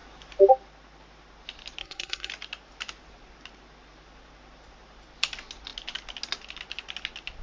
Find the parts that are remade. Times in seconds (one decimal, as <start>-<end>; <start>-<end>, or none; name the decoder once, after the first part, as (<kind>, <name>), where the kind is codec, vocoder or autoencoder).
1.8-2.3 (codec, SNAC)

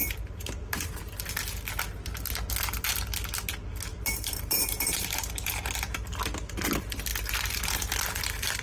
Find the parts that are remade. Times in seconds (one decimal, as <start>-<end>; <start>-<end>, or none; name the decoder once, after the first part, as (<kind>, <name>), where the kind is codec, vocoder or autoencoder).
0.0-1.3 (vocoder, BigVGAN v2); 3.9-5.3

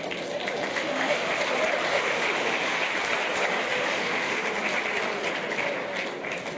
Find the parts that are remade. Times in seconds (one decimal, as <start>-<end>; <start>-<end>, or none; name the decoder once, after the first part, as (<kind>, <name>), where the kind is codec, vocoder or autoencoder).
0.7-1.4 (autoencoder, DAC-VAE); 1.9-2.8; 3.7-4.4

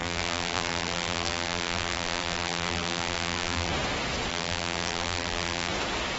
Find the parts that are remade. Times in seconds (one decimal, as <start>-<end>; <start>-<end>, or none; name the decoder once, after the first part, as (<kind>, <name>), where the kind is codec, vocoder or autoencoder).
0.0-3.7 (vocoder, BigVGAN v2); 4.3-5.7

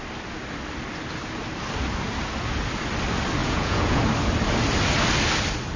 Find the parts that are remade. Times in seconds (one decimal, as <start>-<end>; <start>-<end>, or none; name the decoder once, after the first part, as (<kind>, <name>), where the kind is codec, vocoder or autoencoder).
3.4-4.0 (vocoder, Vocos)

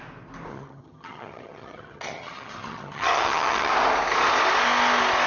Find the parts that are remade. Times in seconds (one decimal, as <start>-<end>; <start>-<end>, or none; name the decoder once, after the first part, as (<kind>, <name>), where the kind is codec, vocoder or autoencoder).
0.5-3.7 (vocoder, HiFi-GAN)

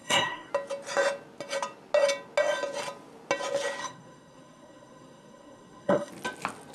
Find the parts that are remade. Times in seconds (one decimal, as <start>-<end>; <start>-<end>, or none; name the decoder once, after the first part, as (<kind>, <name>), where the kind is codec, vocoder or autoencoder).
0.0-0.5 (codec, SNAC); 3.8-6.1